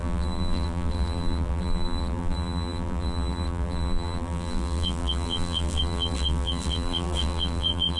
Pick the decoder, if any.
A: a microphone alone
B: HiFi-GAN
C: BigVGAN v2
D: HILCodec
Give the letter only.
C